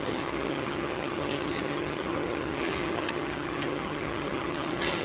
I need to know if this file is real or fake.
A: fake